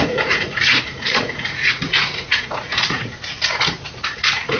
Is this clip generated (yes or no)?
yes